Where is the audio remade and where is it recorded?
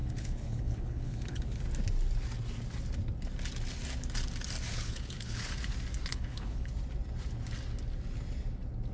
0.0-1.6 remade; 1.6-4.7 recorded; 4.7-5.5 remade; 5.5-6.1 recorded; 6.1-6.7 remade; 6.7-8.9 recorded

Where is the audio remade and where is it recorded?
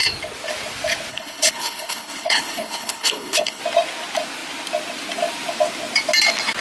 0.0-1.1 recorded; 1.1-3.6 remade; 3.6-6.6 recorded